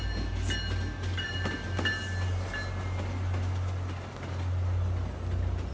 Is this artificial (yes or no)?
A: no